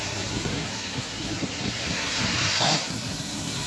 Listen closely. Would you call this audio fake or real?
fake